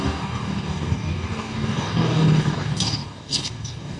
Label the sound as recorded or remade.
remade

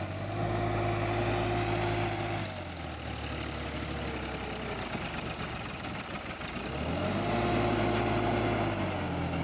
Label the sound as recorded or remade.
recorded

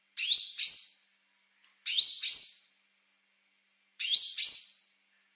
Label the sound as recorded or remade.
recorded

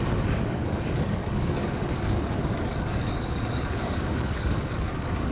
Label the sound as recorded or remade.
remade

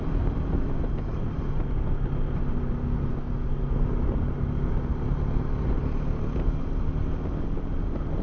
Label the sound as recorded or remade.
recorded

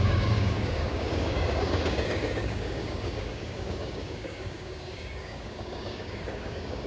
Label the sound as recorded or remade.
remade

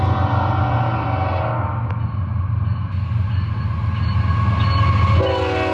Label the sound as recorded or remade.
recorded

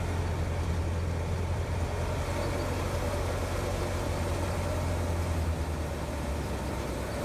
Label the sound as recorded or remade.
recorded